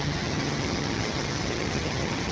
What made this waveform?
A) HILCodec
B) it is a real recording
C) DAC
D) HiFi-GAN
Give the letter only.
D